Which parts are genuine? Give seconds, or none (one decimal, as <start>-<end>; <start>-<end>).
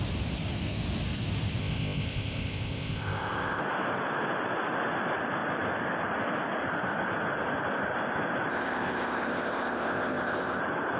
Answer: 0.0-1.6; 3.6-8.5; 10.6-11.0